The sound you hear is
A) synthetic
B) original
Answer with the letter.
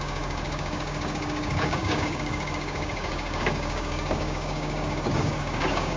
A